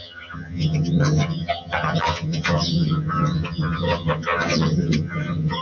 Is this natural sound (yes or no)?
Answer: no